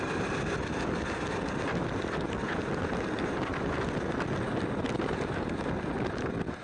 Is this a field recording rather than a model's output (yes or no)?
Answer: yes